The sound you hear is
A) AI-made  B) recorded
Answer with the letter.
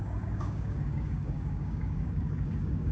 A